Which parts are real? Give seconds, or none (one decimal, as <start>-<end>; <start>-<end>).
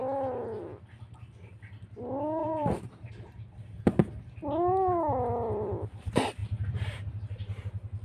0.0-2.4; 3.1-6.4; 7.6-8.0